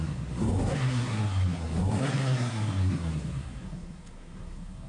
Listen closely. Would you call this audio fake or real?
fake